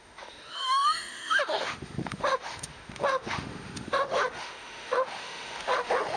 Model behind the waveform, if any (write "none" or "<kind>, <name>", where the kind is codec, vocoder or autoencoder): autoencoder, DAC-VAE